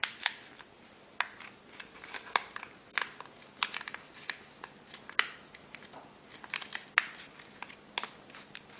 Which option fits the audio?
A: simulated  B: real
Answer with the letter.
B